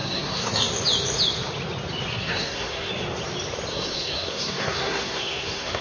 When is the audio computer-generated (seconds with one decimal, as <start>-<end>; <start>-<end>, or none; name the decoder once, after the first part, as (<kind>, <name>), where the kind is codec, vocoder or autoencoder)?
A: 0.0-0.7 (codec, SNAC); 2.1-2.9; 3.7-5.8